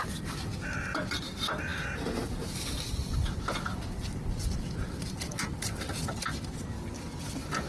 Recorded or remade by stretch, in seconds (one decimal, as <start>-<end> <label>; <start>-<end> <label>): 0.0-7.7 recorded